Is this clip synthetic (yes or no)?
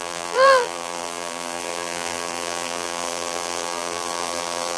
yes